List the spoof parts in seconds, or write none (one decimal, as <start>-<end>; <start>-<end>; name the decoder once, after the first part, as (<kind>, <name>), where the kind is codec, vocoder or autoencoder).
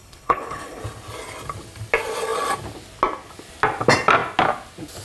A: 0.0-0.8 (codec, HILCodec)